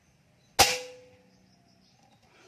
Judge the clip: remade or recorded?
recorded